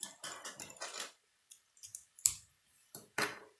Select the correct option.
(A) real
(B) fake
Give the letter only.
B